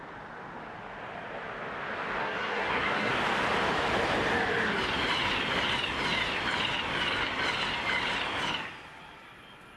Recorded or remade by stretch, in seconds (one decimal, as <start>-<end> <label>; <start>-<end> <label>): 0.0-2.2 recorded; 2.2-3.1 remade; 3.1-9.8 recorded